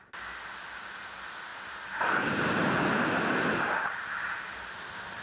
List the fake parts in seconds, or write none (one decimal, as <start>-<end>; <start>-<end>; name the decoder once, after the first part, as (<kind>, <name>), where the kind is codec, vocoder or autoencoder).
1.5-4.6 (vocoder, BigVGAN v2)